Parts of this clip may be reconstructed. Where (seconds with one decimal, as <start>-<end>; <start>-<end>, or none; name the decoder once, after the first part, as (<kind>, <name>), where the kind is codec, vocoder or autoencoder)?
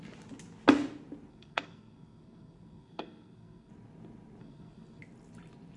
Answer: 1.3-3.7 (codec, SNAC); 4.4-5.0